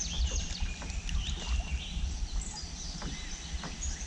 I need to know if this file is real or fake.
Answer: real